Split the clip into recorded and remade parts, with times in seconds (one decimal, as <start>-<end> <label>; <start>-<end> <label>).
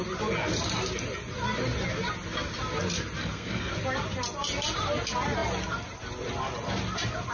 0.0-3.2 recorded; 3.2-3.7 remade; 3.7-7.3 recorded